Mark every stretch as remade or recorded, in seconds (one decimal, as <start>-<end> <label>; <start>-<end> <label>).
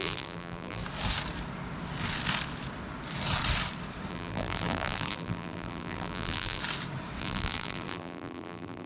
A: 0.0-0.8 remade; 0.8-4.1 recorded; 4.1-6.6 remade; 6.6-7.2 recorded; 7.2-8.9 remade